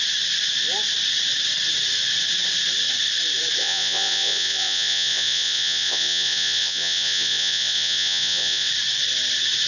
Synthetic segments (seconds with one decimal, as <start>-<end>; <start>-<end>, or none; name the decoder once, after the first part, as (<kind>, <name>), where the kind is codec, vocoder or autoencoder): 3.6-8.7 (vocoder, Vocos)